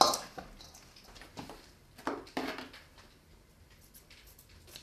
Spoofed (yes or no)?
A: no